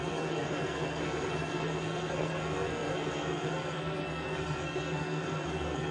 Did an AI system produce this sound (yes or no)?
yes